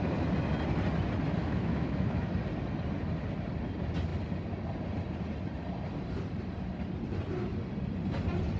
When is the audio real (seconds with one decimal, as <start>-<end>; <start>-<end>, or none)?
0.0-1.4; 2.3-8.6